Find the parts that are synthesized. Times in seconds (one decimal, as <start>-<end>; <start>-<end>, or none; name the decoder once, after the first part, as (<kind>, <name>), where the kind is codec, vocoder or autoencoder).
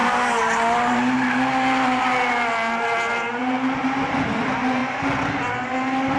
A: 3.4-4.3 (vocoder, BigVGAN v2)